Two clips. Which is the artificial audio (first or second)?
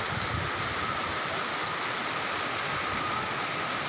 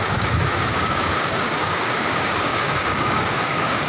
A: second